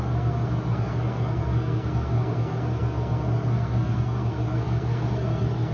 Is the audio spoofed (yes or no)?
yes